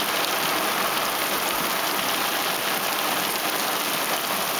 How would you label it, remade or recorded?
recorded